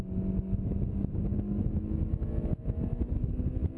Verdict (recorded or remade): recorded